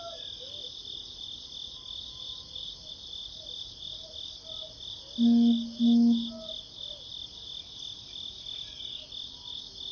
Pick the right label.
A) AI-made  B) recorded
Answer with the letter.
B